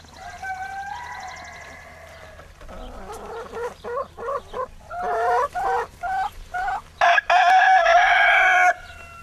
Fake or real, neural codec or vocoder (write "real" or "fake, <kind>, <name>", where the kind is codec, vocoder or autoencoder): real